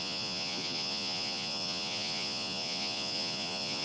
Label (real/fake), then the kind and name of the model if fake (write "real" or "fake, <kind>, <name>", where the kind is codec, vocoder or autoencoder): fake, vocoder, Vocos